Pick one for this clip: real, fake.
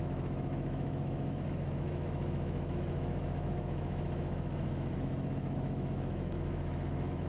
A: fake